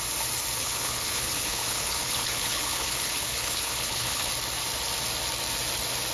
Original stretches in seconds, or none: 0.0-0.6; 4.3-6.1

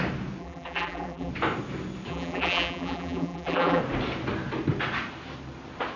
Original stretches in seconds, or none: 0.0-0.4; 1.3-2.1; 3.8-6.0

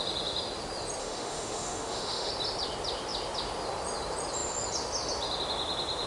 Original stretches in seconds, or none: 0.0-1.0; 2.3-6.1

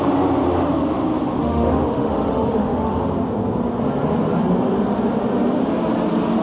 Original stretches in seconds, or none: 0.0-1.4; 3.0-6.4

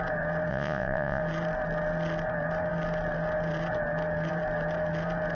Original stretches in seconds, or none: 0.0-0.5; 1.2-5.3

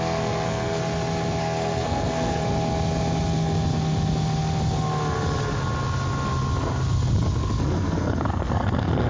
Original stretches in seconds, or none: 0.8-1.4; 2.4-7.6